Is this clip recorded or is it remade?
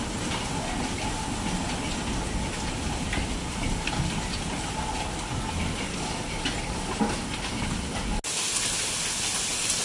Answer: recorded